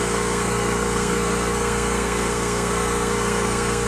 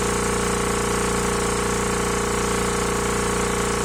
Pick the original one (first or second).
second